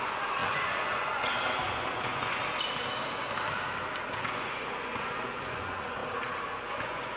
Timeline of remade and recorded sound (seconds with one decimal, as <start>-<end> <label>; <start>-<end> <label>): 0.0-2.4 remade; 2.4-4.1 recorded; 4.1-6.0 remade; 6.0-6.7 recorded; 6.7-7.2 remade